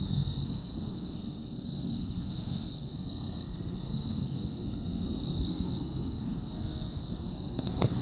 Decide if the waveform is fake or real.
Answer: fake